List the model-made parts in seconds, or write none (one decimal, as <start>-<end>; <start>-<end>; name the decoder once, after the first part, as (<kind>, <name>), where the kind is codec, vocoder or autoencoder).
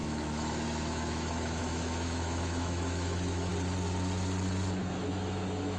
0.0-3.5 (autoencoder, DAC-VAE); 4.8-5.8